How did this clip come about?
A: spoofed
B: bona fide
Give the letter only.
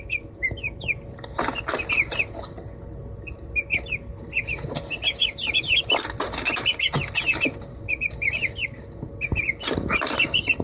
B